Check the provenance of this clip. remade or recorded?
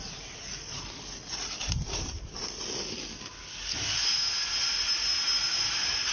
recorded